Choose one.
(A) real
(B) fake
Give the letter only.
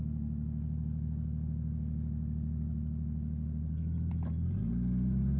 A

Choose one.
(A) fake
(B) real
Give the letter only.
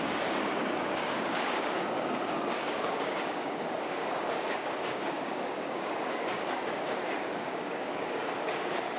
A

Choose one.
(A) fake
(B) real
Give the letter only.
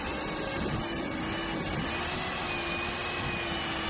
B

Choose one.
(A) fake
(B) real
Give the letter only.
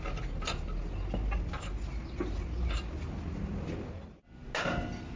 B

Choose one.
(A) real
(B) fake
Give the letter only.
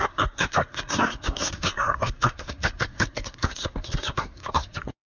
B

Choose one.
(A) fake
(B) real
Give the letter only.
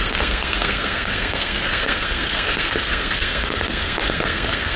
A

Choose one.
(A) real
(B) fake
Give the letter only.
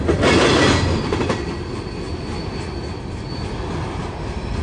A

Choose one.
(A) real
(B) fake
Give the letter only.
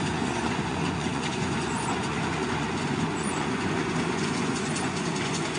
B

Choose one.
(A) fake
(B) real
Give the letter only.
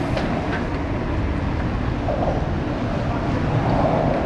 B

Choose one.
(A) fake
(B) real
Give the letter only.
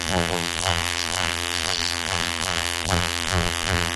A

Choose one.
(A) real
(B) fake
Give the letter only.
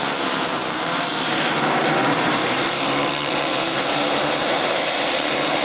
B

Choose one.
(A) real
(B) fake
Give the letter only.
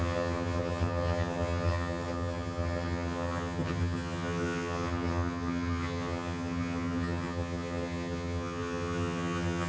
B